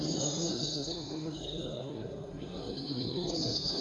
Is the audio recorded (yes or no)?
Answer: no